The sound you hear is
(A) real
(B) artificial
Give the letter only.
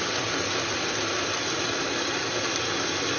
A